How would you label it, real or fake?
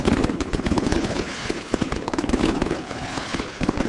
fake